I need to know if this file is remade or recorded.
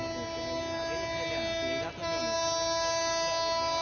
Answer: recorded